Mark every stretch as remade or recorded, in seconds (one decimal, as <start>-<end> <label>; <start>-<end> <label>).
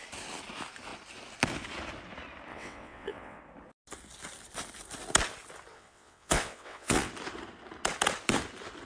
0.0-2.5 recorded; 2.5-3.4 remade; 3.4-5.7 recorded; 5.7-7.1 remade; 7.1-8.9 recorded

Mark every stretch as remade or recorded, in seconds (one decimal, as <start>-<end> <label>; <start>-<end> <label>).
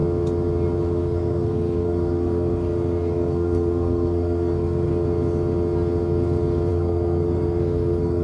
0.0-0.8 recorded; 0.8-4.9 remade; 4.9-6.7 recorded; 6.7-8.2 remade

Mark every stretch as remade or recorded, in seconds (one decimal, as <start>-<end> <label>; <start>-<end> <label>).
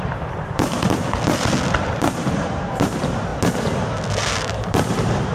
0.0-1.0 remade; 1.0-2.0 recorded; 2.0-3.3 remade; 3.3-4.4 recorded; 4.4-5.3 remade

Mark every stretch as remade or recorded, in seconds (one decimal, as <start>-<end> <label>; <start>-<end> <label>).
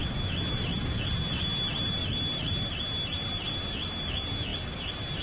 0.0-5.2 recorded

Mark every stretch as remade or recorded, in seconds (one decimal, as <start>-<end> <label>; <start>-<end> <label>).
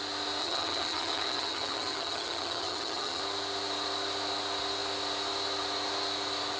0.0-0.4 recorded; 0.4-3.2 remade; 3.2-6.6 recorded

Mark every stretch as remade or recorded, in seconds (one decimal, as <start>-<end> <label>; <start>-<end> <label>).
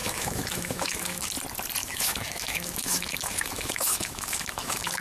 0.0-1.3 remade; 1.3-1.8 recorded; 1.8-5.0 remade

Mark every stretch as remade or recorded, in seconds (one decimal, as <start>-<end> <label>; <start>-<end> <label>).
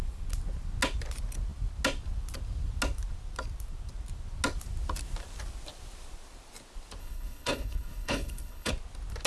0.0-7.0 recorded; 7.0-8.7 remade; 8.7-9.3 recorded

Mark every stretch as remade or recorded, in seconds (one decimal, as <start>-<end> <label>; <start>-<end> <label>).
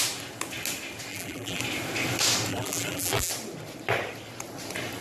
0.0-1.1 recorded; 1.1-1.6 remade; 1.6-2.5 recorded; 2.5-3.3 remade; 3.3-5.0 recorded